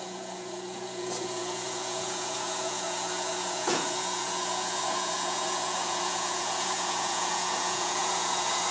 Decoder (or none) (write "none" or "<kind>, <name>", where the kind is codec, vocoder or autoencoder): vocoder, Vocos